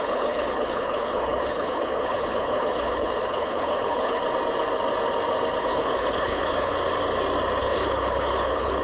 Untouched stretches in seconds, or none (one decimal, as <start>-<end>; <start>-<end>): 4.2-5.6; 6.7-7.6